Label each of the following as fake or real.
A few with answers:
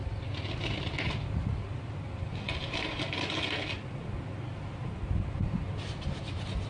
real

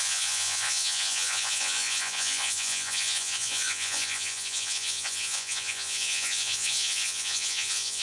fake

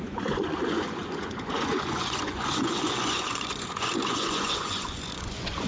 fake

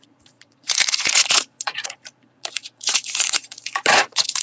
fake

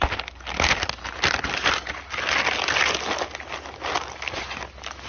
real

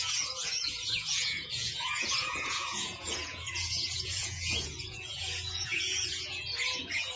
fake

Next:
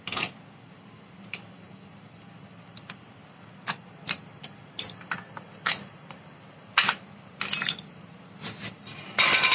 real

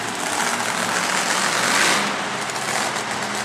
real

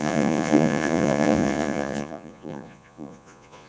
fake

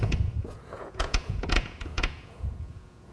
fake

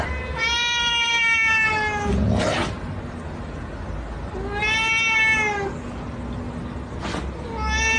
real